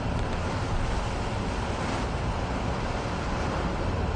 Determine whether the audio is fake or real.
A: real